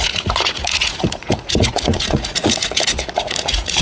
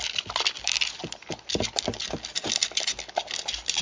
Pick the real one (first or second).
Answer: second